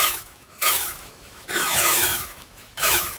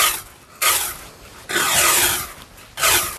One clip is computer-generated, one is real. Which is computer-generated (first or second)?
first